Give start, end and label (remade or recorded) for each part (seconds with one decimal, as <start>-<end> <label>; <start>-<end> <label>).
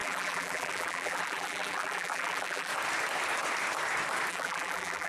0.0-2.7 remade; 2.7-4.3 recorded; 4.3-5.1 remade